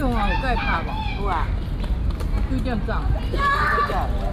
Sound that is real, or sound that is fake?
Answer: real